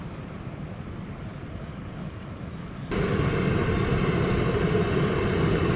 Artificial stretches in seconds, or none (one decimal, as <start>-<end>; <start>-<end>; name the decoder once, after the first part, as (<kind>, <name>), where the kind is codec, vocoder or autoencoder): none